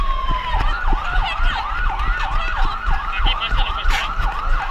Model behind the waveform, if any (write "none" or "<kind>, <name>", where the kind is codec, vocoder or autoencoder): none